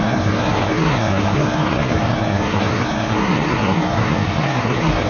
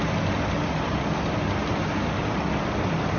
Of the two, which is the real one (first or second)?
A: second